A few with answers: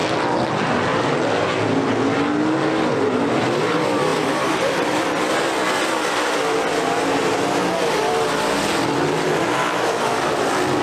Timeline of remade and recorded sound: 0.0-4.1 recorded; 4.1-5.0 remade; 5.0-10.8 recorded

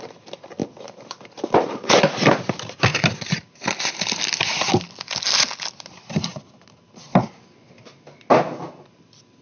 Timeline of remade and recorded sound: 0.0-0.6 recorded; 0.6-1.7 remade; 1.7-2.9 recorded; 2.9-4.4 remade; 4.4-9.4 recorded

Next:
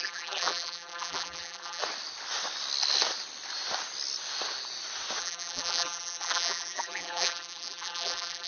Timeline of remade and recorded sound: 0.0-1.8 remade; 1.8-5.2 recorded; 5.2-8.5 remade

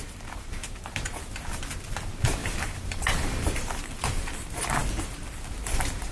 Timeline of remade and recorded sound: 0.0-0.6 recorded; 0.6-1.4 remade; 1.4-2.4 recorded; 2.4-3.9 remade; 3.9-6.1 recorded

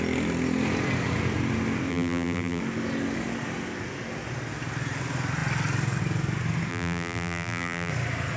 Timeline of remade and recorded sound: 0.0-1.9 recorded; 1.9-2.6 remade; 2.6-6.7 recorded; 6.7-7.9 remade; 7.9-8.4 recorded